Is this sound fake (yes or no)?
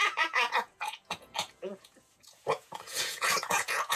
yes